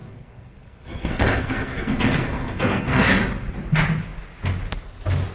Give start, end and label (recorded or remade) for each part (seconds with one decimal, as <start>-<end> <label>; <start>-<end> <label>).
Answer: 0.0-3.2 remade; 3.2-5.3 recorded